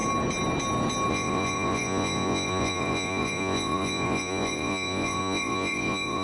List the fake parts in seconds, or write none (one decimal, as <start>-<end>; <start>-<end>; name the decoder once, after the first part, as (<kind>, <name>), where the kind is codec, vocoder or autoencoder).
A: 1.1-6.2 (vocoder, Vocos)